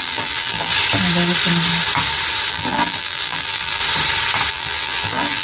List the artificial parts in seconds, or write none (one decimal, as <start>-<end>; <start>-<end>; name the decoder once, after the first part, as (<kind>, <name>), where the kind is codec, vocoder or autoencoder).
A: 0.0-0.7 (vocoder, BigVGAN v2); 2.5-3.8; 4.5-5.4